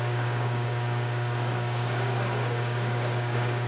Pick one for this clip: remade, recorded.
remade